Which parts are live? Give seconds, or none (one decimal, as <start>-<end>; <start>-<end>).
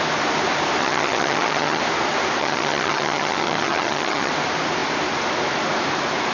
0.0-0.8; 1.8-2.4; 4.3-6.3